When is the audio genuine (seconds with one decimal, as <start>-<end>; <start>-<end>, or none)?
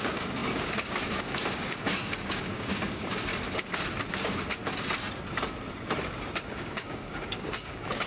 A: 3.3-4.1; 4.6-6.5